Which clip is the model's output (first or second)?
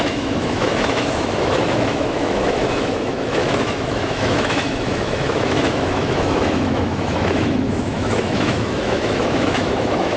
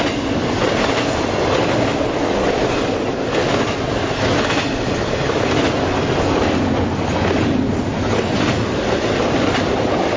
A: first